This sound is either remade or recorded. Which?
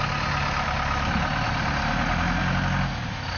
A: recorded